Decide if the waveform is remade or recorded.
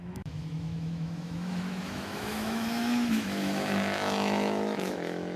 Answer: remade